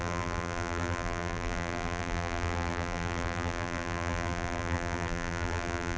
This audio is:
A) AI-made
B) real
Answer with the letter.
A